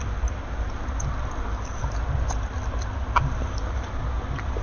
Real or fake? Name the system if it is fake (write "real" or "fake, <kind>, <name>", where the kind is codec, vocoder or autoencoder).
real